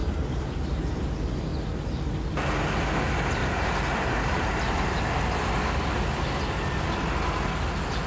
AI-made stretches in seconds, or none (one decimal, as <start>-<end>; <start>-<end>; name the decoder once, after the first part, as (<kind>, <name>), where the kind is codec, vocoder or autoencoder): 0.0-0.5 (vocoder, BigVGAN v2); 3.4-5.0